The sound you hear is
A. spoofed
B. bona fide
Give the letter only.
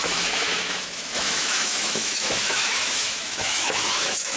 A